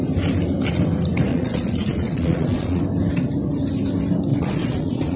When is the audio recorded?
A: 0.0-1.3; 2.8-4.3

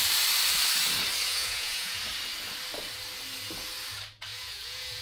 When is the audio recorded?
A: 0.0-1.3; 2.0-4.3